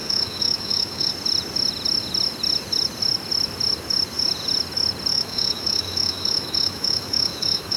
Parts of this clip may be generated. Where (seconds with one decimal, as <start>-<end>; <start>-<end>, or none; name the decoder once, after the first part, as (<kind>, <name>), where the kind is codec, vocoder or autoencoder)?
0.0-1.1 (autoencoder, DAC-VAE); 5.1-7.8